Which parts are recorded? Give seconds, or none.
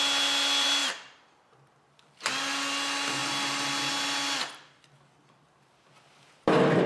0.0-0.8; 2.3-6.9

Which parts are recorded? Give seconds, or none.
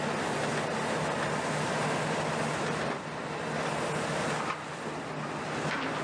0.0-6.0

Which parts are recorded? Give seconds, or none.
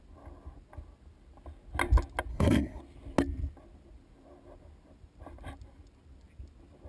0.0-2.3; 2.8-6.9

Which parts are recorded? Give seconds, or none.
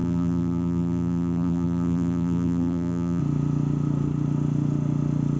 3.2-5.4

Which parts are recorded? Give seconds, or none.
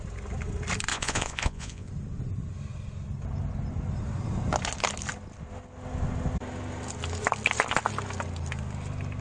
0.0-0.9; 1.9-9.2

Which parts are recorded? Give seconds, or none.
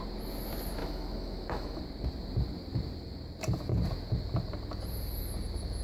0.0-0.8; 1.8-5.8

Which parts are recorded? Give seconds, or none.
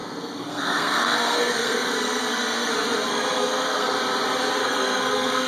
2.7-3.1; 4.0-4.6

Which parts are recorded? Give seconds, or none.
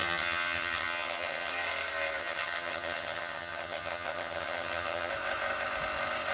1.5-2.2; 5.1-6.3